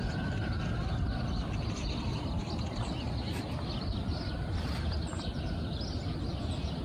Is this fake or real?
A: real